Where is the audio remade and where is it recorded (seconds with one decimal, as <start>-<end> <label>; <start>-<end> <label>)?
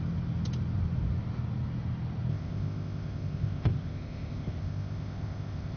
0.0-2.3 recorded; 2.3-5.8 remade